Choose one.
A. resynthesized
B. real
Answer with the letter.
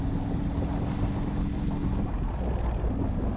B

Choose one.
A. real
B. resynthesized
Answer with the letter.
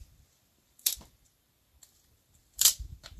B